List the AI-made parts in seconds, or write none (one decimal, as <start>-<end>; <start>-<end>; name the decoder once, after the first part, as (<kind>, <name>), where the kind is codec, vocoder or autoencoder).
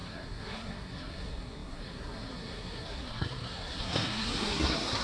0.0-5.0 (codec, SNAC)